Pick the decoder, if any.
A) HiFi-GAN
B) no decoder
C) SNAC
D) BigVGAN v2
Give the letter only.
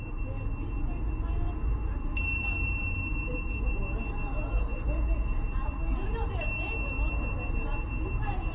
B